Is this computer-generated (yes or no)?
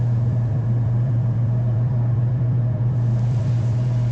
yes